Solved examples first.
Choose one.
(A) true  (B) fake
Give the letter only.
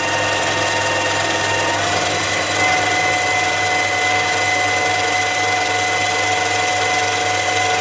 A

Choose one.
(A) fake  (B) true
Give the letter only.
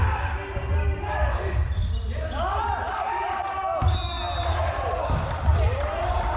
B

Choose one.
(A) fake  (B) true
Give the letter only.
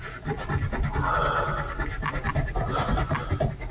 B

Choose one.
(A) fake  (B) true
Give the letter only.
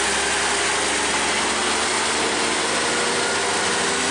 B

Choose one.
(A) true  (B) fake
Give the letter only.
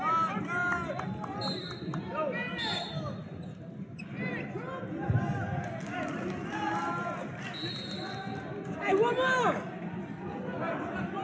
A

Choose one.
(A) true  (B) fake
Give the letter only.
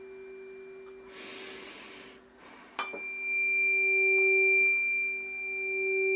A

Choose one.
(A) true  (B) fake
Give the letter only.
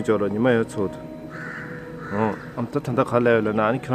B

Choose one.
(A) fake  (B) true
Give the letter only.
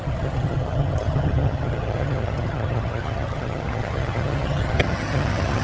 A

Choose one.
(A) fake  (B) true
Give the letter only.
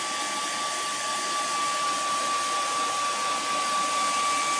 B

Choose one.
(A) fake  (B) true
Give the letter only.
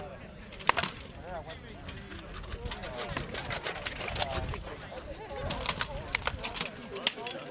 B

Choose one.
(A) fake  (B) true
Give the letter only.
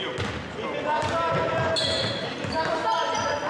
B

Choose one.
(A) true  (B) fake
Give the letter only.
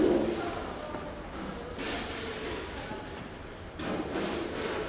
A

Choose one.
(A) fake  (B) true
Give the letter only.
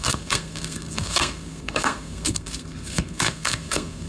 A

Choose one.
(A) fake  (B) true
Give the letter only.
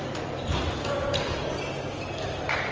B